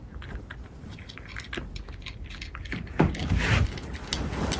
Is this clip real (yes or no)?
yes